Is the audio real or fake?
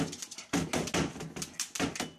real